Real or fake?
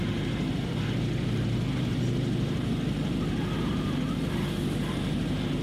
fake